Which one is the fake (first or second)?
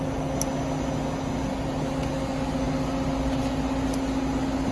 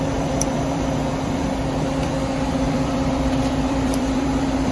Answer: second